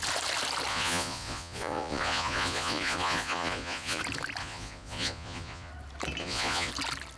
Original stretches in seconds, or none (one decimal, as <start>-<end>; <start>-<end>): 0.0-0.7; 4.0-4.4; 5.7-6.2; 6.7-7.2